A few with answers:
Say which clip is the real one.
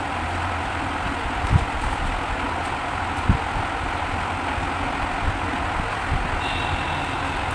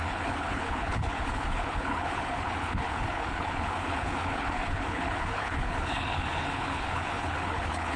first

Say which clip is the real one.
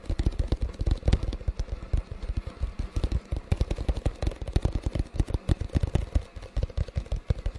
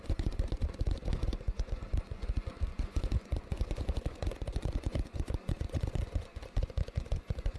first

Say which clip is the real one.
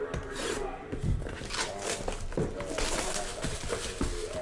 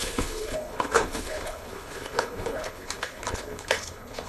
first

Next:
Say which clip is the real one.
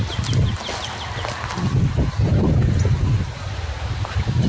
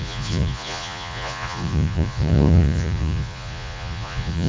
first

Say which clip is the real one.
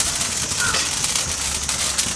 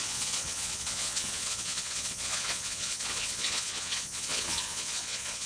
first